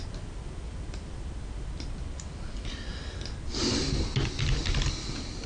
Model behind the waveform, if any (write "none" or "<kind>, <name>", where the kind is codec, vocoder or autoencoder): none